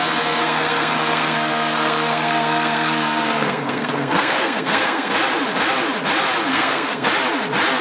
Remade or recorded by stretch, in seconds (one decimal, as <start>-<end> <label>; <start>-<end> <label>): 0.0-0.4 recorded; 0.4-5.1 remade; 5.1-6.5 recorded; 6.5-7.1 remade; 7.1-7.8 recorded